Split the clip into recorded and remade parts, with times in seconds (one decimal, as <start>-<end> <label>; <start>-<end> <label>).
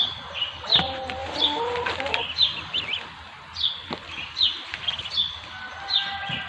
0.0-6.5 recorded